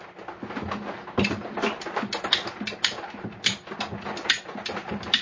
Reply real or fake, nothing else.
real